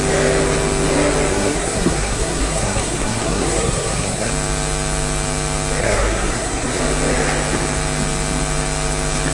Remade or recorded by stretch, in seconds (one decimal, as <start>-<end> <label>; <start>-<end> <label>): 0.0-1.3 recorded; 1.3-4.3 remade; 4.3-5.8 recorded; 5.8-6.8 remade; 6.8-9.3 recorded